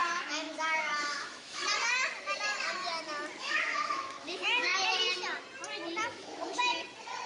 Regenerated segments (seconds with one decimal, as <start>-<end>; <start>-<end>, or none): 0.0-1.6; 3.4-4.7; 6.1-6.7